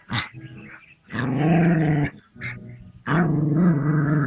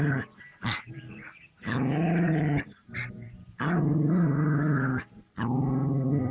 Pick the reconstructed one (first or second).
second